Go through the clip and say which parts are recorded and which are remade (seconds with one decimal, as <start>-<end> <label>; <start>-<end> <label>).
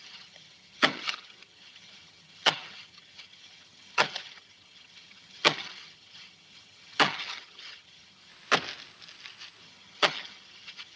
0.0-8.3 remade; 8.3-9.6 recorded; 9.6-11.0 remade